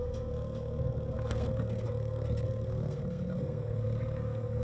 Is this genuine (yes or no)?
no